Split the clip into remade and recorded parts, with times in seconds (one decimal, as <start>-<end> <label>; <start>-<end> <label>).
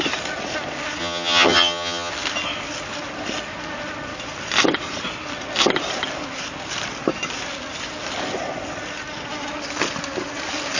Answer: 0.0-1.0 recorded; 1.0-2.1 remade; 2.1-10.8 recorded